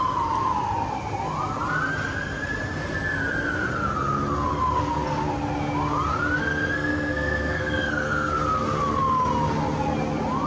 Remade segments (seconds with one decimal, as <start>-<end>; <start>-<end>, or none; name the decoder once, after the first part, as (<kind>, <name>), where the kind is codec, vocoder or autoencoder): 6.4-8.3 (codec, SNAC)